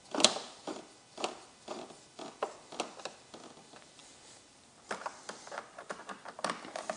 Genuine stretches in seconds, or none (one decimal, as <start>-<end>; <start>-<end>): 0.0-7.0